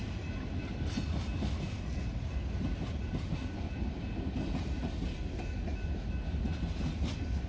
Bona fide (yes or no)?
yes